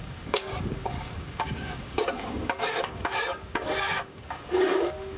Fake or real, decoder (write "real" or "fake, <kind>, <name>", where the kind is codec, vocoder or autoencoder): fake, codec, DAC